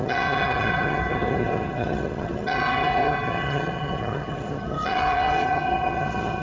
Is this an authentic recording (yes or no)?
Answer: no